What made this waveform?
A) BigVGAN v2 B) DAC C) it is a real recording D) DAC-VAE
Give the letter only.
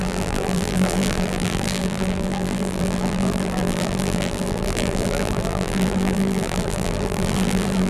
A